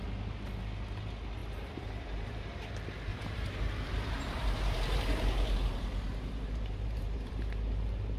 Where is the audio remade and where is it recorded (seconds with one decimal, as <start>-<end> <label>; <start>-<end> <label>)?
0.0-1.4 recorded; 1.4-2.7 remade; 2.7-3.1 recorded; 3.1-7.4 remade; 7.4-8.2 recorded